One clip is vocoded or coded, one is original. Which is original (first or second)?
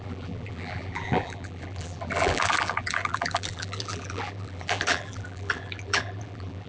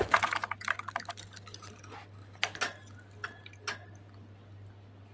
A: second